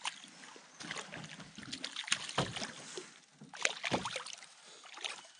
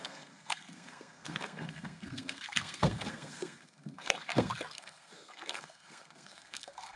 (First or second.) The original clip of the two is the first